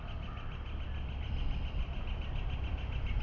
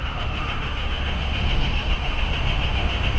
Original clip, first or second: first